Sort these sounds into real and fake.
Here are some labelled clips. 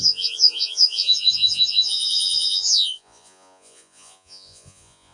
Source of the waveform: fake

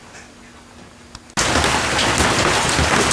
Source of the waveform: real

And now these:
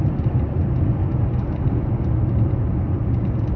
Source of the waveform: real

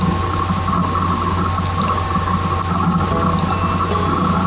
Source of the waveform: real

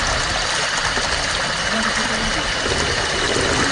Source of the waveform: real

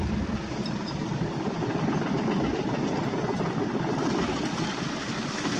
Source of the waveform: real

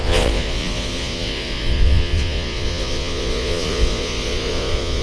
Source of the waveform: fake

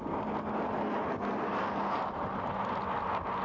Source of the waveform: real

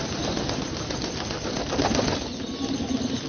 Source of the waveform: real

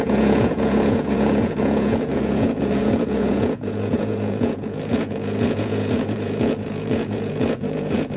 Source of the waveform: fake